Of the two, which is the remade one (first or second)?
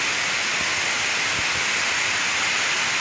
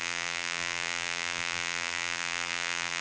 second